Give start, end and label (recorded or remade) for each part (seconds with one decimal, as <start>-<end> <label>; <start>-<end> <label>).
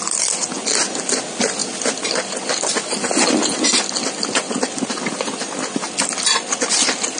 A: 0.0-7.2 recorded